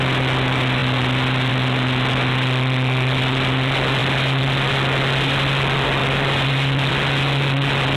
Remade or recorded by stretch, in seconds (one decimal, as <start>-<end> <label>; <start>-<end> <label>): 0.0-4.0 recorded; 4.0-4.7 remade; 4.7-6.0 recorded; 6.0-6.9 remade; 6.9-8.0 recorded